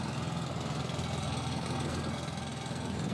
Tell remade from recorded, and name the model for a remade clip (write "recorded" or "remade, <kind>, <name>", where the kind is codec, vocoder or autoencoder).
remade, codec, SNAC